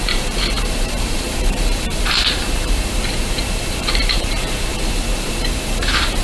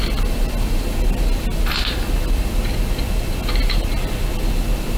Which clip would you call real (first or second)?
second